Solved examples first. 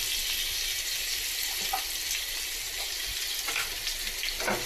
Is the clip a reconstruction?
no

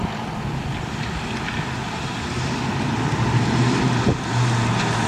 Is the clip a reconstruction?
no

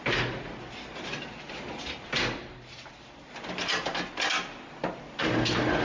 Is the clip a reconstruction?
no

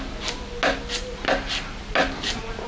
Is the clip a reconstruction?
no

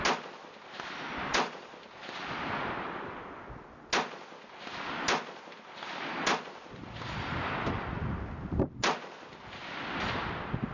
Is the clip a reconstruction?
no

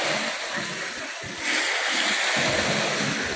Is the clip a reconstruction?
no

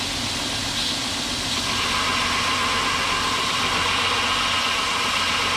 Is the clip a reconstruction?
no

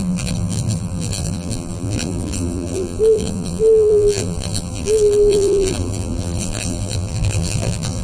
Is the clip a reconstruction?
yes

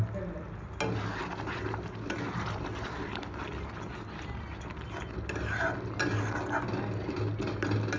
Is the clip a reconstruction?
no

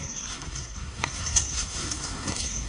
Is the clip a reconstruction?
yes